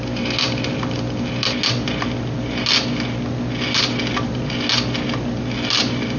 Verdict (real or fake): real